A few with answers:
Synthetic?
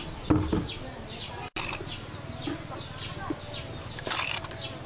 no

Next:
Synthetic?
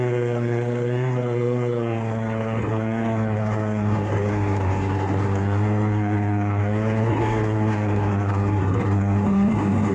yes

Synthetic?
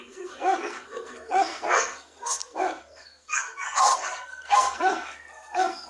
yes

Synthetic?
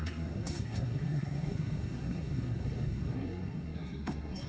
yes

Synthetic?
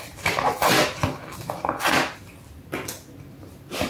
no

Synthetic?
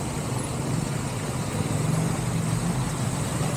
no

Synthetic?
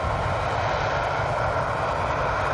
no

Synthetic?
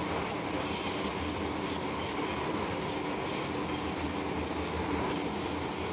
no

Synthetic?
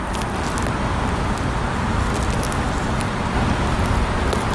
no